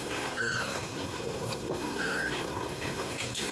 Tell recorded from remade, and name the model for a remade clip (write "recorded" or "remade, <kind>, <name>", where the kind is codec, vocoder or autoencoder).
remade, codec, SNAC